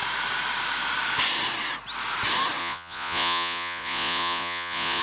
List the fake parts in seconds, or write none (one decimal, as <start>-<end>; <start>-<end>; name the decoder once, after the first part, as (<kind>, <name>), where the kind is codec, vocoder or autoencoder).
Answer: 2.6-5.0 (vocoder, Vocos)